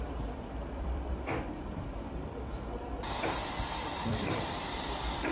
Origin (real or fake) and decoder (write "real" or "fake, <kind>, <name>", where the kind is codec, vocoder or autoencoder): fake, vocoder, BigVGAN v2